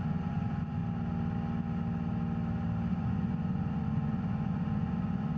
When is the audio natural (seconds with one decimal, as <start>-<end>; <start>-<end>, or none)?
0.8-2.9